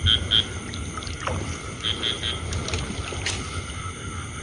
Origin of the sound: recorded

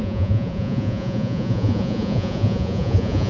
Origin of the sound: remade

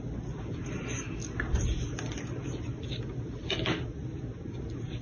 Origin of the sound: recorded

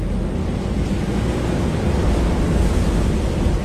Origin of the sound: recorded